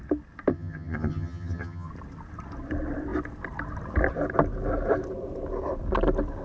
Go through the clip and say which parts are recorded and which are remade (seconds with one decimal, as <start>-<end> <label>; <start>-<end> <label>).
0.0-0.5 recorded; 0.5-1.9 remade; 1.9-6.4 recorded